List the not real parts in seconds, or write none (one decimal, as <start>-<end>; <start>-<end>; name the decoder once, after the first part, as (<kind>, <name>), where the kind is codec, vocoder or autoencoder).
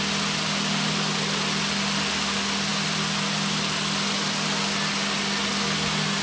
none